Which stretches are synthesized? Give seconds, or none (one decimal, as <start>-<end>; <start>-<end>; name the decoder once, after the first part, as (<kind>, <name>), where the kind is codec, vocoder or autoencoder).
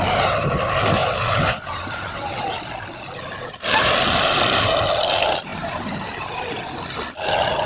0.0-7.7 (vocoder, BigVGAN v2)